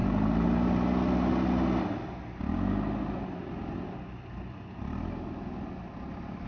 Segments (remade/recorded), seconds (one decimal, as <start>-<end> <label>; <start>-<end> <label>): 0.0-6.5 recorded